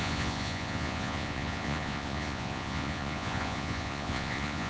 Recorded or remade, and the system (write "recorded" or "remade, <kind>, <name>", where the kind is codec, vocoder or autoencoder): remade, vocoder, Vocos